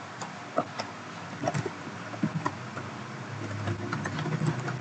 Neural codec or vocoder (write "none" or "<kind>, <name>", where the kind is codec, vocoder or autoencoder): none